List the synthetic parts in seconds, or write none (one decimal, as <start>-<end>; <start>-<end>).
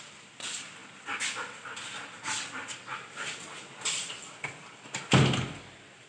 none